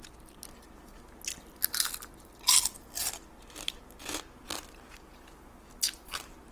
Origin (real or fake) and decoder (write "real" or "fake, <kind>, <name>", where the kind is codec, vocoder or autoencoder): real